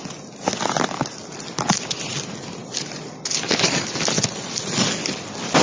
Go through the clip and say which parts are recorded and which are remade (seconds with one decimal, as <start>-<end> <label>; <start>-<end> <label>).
0.0-5.6 recorded